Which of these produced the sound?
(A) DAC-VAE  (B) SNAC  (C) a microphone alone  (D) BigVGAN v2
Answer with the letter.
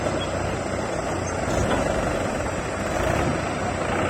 C